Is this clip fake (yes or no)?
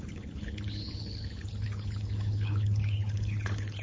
yes